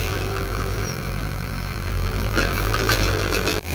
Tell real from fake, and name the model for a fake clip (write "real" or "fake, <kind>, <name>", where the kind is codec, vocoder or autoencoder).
fake, vocoder, BigVGAN v2